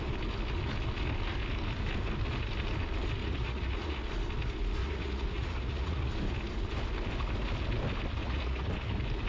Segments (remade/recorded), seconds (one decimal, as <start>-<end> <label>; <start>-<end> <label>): 0.0-3.2 recorded; 3.2-4.0 remade; 4.0-4.8 recorded; 4.8-6.1 remade; 6.1-8.2 recorded; 8.2-8.7 remade; 8.7-9.3 recorded